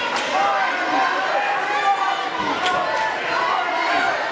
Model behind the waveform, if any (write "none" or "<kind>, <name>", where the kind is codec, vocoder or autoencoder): none